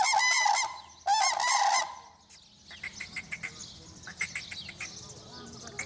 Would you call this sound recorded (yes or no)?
yes